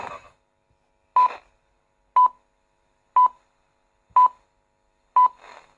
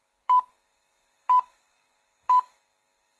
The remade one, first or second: second